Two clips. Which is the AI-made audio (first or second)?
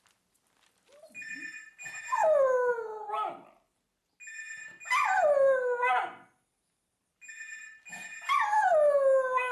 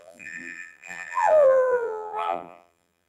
second